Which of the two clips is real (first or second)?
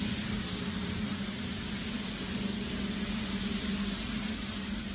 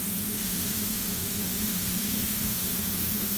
first